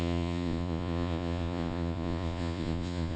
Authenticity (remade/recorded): remade